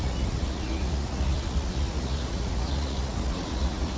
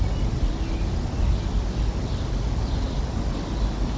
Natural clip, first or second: second